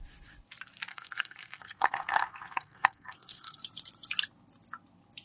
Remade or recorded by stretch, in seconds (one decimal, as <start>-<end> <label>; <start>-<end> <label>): 0.0-0.9 recorded; 0.9-3.6 remade; 3.6-5.2 recorded